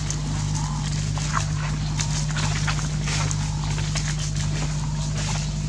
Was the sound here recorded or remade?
recorded